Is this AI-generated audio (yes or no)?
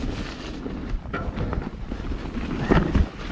no